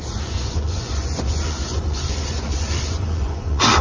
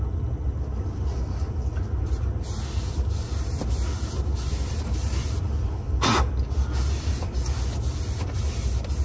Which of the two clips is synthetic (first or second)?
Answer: first